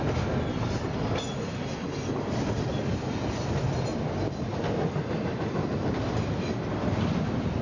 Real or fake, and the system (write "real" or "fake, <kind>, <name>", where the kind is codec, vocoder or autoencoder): real